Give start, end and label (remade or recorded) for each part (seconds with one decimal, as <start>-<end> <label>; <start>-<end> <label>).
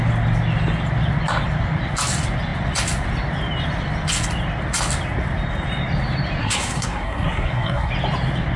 0.0-6.4 recorded; 6.4-7.9 remade; 7.9-8.6 recorded